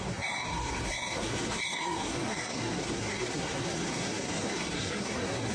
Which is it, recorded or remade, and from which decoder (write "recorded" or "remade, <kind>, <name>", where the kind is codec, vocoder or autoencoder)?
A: remade, codec, SNAC